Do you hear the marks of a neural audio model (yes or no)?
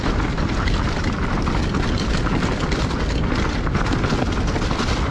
no